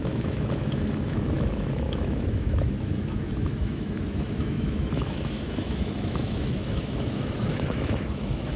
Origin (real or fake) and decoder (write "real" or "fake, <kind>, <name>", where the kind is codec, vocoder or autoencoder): fake, autoencoder, DAC-VAE